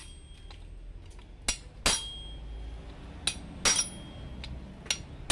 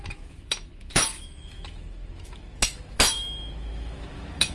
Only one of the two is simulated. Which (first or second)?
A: second